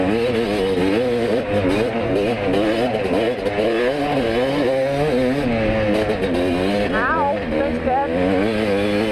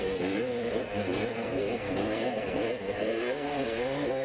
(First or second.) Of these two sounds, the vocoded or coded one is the second